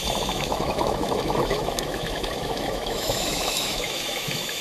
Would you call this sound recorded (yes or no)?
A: no